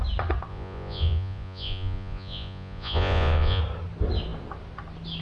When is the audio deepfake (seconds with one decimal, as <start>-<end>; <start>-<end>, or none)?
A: 0.5-3.6